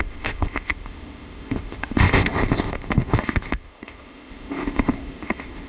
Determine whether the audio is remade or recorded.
remade